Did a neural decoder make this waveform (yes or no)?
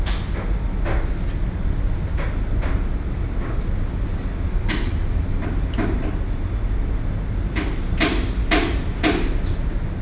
no